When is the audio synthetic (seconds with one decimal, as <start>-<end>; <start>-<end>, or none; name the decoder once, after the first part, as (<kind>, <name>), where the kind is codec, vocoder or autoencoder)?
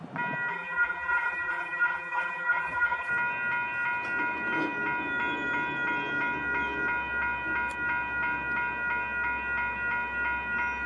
0.5-3.1 (vocoder, BigVGAN v2)